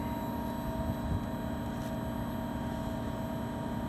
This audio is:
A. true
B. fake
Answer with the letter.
A